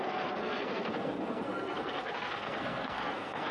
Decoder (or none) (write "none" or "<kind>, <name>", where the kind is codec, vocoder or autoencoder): codec, SNAC